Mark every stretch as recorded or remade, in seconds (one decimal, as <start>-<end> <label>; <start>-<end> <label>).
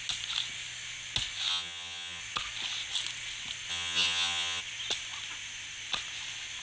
0.0-1.5 recorded; 1.5-2.2 remade; 2.2-3.7 recorded; 3.7-4.6 remade; 4.6-6.6 recorded